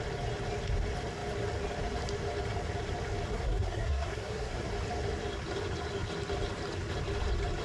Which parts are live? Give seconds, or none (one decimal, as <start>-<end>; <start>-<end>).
0.0-3.3; 4.7-7.6